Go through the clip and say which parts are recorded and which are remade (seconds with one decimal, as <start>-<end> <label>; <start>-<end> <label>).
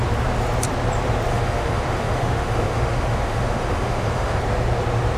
0.0-1.3 recorded; 1.3-4.4 remade; 4.4-5.2 recorded